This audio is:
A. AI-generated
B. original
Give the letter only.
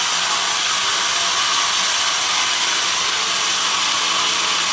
B